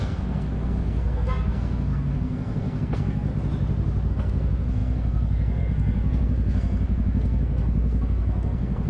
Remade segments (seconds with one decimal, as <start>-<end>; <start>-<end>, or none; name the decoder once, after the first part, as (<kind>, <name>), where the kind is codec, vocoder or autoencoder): 0.0-3.3 (codec, SNAC); 4.1-8.9